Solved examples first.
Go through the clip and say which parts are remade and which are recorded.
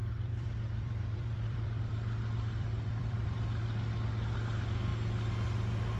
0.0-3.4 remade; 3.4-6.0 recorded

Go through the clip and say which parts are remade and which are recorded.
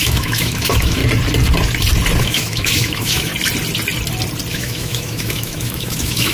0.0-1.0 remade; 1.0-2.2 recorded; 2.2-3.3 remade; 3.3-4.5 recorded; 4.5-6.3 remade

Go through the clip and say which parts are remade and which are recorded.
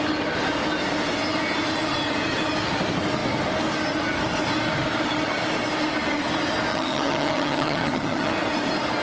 0.0-6.7 recorded; 6.7-8.3 remade; 8.3-9.0 recorded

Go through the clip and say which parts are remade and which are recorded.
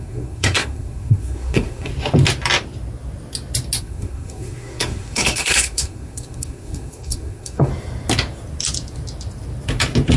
0.0-1.9 remade; 1.9-3.8 recorded; 3.8-7.7 remade; 7.7-10.2 recorded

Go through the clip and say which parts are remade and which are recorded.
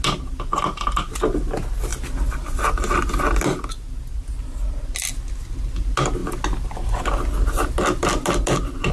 0.0-8.9 recorded